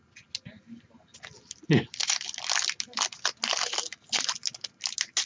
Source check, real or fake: real